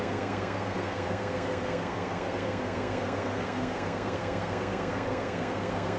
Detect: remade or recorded remade